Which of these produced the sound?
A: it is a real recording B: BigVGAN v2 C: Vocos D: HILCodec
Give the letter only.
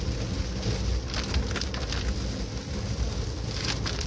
A